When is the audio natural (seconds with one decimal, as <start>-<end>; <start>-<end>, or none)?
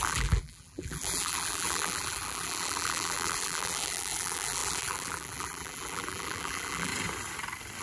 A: 6.9-7.8